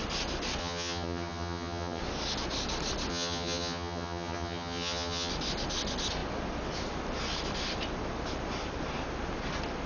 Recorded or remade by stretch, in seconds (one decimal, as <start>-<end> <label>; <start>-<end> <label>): 0.0-0.6 recorded; 0.6-2.0 remade; 2.0-3.1 recorded; 3.1-5.3 remade; 5.3-9.9 recorded